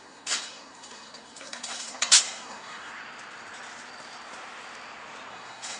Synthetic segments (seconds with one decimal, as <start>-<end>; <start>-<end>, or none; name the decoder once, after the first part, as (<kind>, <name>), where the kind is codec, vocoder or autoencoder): 0.0-2.9 (codec, SNAC); 5.3-5.8